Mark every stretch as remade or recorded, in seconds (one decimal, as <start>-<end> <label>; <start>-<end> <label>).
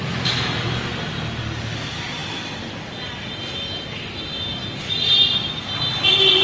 0.0-6.4 recorded